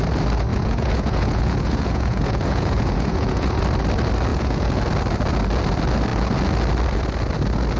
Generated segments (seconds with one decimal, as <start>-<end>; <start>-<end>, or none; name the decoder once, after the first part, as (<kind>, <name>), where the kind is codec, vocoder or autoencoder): 0.5-3.6 (vocoder, Vocos); 4.3-4.8

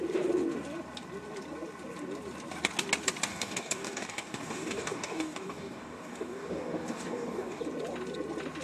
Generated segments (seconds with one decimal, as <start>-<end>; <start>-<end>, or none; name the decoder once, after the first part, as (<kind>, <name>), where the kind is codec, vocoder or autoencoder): 3.3-7.6 (codec, DAC)

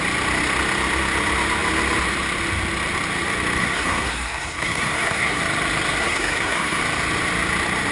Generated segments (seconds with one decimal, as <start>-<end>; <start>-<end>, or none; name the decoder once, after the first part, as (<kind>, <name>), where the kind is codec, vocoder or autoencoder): 3.6-5.4 (codec, SNAC); 6.0-6.8

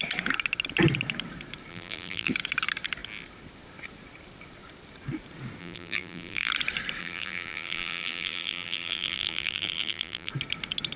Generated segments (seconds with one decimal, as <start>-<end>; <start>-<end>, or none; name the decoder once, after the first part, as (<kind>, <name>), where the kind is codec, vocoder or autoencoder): 1.7-2.3 (vocoder, BigVGAN v2); 5.6-6.5; 7.0-10.3

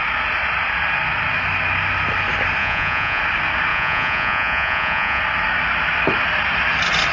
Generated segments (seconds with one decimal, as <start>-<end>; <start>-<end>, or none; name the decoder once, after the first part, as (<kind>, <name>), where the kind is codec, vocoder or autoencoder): 2.6-3.2 (vocoder, Vocos); 3.7-5.2

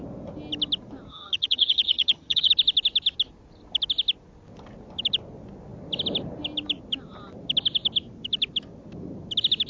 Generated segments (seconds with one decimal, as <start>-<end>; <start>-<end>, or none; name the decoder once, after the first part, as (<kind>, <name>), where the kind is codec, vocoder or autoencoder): 1.1-2.5 (vocoder, HiFi-GAN)